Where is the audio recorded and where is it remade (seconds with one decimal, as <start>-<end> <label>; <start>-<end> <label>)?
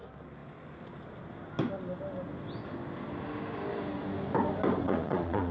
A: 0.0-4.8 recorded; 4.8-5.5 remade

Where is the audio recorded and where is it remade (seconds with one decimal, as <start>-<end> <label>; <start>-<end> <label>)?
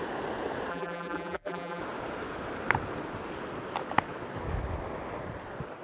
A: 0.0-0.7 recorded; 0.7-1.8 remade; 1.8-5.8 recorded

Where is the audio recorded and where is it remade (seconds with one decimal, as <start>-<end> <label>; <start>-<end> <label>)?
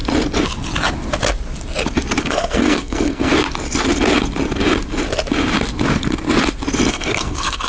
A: 0.0-2.2 recorded; 2.2-3.3 remade; 3.3-6.9 recorded; 6.9-7.7 remade